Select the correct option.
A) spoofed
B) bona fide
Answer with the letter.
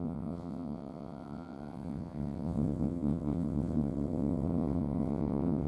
A